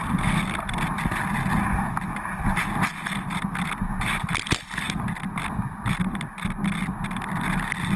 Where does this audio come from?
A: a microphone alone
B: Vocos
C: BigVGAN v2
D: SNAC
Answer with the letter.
A